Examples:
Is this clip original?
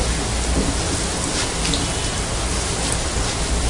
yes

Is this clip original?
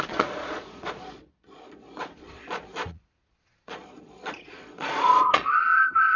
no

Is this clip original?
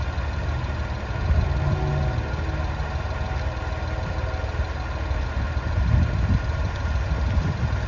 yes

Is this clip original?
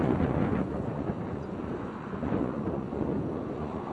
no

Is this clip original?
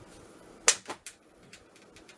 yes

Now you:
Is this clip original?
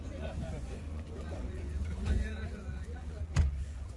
no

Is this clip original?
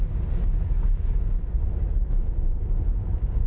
yes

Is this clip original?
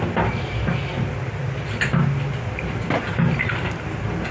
yes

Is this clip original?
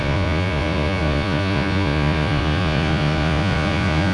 no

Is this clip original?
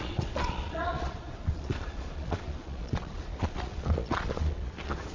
no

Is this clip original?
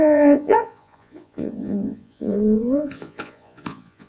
no